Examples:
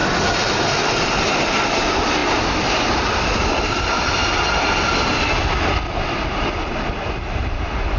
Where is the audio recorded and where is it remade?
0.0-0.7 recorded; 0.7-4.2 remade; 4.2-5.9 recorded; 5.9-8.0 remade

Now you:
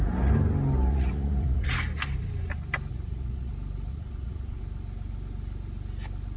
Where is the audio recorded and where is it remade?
0.0-0.9 recorded; 0.9-1.7 remade; 1.7-2.9 recorded; 2.9-3.5 remade; 3.5-3.9 recorded; 3.9-4.6 remade; 4.6-6.4 recorded

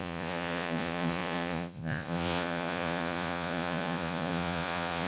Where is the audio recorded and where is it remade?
0.0-5.1 remade

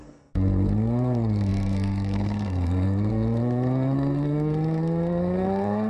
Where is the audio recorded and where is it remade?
0.0-5.9 remade

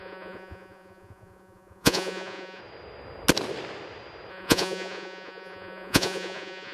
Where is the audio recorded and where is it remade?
0.0-2.6 remade; 2.6-4.3 recorded; 4.3-6.7 remade

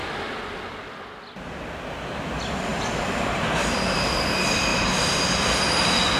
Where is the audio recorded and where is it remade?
0.0-2.7 recorded; 2.7-3.3 remade; 3.3-4.7 recorded; 4.7-5.6 remade; 5.6-6.2 recorded